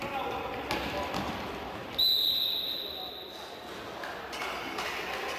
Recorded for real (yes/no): yes